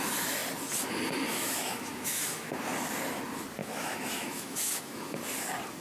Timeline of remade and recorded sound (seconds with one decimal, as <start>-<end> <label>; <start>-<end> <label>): 0.0-1.3 recorded; 1.3-2.5 remade; 2.5-3.6 recorded; 3.6-5.2 remade; 5.2-5.8 recorded

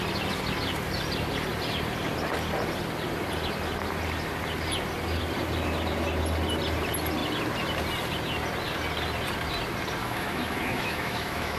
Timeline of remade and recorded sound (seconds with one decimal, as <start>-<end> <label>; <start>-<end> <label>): 0.0-10.0 recorded; 10.0-11.6 remade

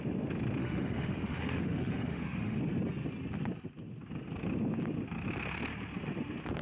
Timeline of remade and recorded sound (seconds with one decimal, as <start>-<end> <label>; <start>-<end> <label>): 0.0-0.6 recorded; 0.6-2.6 remade; 2.6-6.6 recorded

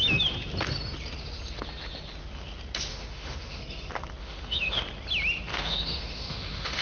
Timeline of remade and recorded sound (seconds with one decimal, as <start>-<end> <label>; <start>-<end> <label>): 0.0-2.9 recorded; 2.9-3.6 remade; 3.6-4.2 recorded; 4.2-4.8 remade; 4.8-5.5 recorded; 5.5-6.8 remade

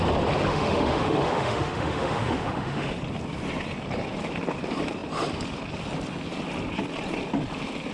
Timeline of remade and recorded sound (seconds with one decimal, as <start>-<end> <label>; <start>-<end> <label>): 0.0-0.5 recorded; 0.5-2.9 remade; 2.9-7.9 recorded

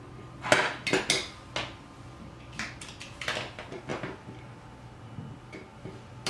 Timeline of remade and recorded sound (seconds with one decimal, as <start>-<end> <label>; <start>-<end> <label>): 0.0-6.3 recorded

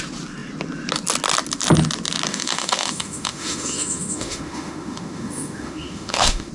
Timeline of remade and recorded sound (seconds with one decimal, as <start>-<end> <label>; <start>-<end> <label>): 0.0-2.3 recorded; 2.3-6.5 remade